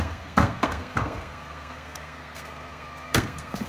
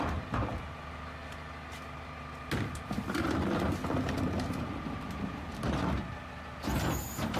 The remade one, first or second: first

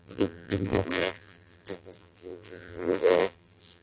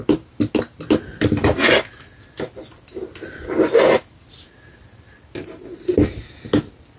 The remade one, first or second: first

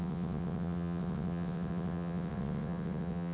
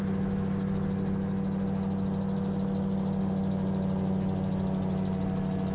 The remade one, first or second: first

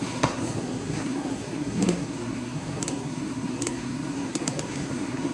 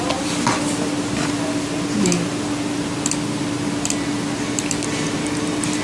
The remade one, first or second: first